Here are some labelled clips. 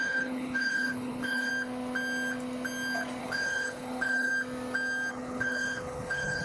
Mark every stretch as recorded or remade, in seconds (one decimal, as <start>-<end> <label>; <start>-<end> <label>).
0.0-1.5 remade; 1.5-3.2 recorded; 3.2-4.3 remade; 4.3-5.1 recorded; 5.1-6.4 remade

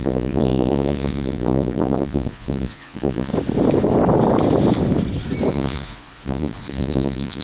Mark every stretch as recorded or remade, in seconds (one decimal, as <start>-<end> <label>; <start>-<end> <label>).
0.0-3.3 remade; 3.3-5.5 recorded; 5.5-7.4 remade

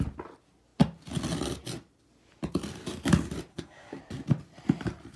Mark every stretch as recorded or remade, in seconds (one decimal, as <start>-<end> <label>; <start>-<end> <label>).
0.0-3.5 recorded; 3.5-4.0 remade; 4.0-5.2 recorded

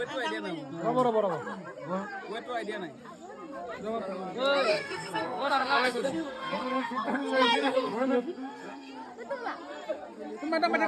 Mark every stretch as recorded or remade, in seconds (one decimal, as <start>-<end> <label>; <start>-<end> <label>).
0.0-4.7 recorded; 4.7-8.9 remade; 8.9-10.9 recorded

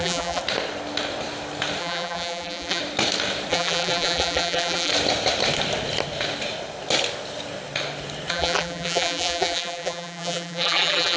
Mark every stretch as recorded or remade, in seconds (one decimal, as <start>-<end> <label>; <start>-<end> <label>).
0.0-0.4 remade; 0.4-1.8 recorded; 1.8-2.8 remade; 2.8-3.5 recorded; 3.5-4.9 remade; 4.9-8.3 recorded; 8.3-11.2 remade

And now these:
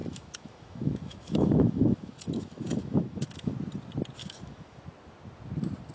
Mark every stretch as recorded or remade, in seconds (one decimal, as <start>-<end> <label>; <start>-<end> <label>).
0.0-3.5 remade; 3.5-4.2 recorded; 4.2-4.8 remade; 4.8-5.9 recorded